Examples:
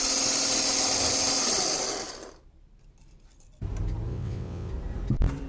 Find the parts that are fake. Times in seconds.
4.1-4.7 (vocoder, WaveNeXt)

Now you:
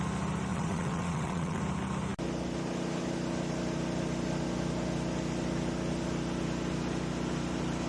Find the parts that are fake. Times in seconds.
0.5-1.6 (vocoder, WaveNeXt)

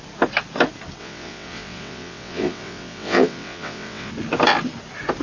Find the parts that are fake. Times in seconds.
1.0-4.1 (vocoder, WaveNeXt)

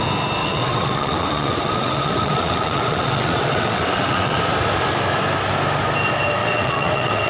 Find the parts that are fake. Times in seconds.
0.4-4.4 (vocoder, WaveNeXt); 6.4-7.3